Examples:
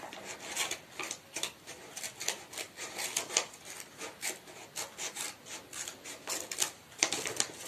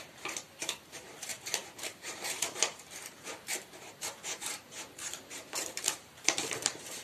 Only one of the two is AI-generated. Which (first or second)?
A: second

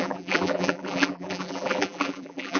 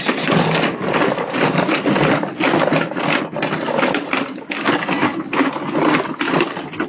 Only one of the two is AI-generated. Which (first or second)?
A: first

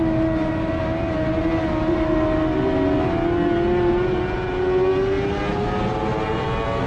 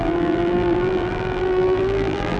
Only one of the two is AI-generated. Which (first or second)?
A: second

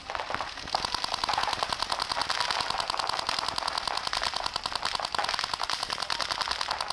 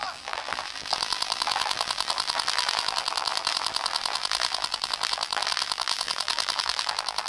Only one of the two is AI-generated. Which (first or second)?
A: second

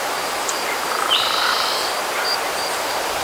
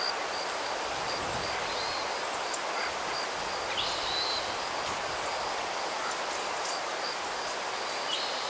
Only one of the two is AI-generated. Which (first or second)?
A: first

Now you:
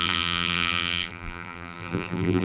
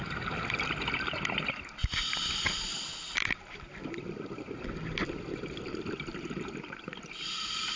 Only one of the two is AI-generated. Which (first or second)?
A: first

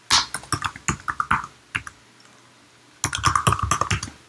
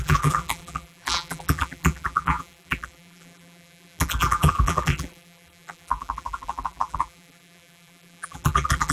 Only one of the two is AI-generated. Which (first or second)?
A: second